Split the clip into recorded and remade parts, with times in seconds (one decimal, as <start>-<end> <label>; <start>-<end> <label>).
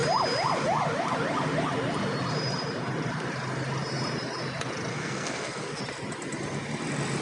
0.0-4.9 recorded; 4.9-5.8 remade; 5.8-7.2 recorded